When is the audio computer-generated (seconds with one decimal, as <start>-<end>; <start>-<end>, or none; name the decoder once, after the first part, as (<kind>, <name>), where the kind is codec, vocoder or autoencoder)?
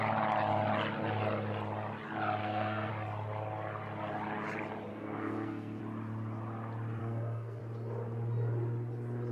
2.4-2.9 (codec, SNAC); 4.9-5.8; 7.0-7.6